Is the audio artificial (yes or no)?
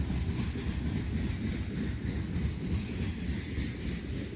no